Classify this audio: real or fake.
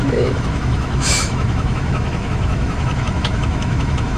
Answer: fake